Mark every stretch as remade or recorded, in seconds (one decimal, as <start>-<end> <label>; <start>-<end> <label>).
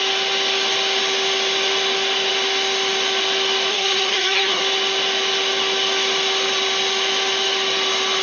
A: 0.0-3.7 recorded; 3.7-4.6 remade; 4.6-8.2 recorded